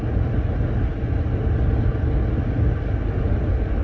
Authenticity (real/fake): real